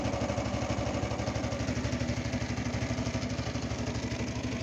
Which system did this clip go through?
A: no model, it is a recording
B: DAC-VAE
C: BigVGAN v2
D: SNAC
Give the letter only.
A